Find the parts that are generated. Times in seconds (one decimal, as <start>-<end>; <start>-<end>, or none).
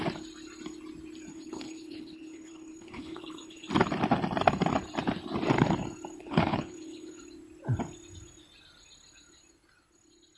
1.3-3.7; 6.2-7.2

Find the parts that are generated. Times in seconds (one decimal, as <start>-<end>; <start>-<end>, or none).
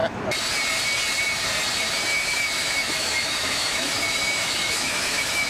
2.1-5.5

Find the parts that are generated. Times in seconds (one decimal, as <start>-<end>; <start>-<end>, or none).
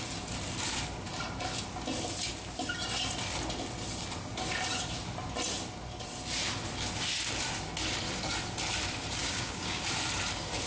9.2-9.8